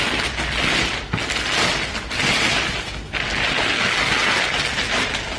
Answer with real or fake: real